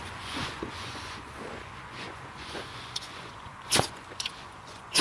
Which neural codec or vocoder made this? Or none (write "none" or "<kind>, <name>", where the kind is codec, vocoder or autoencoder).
vocoder, Vocos